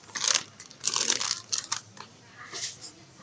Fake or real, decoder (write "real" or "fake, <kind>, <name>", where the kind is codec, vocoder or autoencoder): real